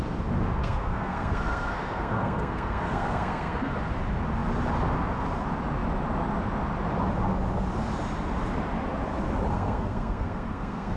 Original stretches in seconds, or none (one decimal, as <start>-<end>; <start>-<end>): 0.0-0.6; 3.7-9.5